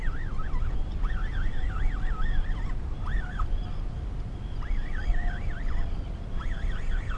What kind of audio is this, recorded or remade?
recorded